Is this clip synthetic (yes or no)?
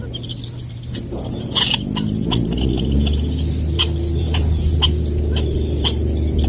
no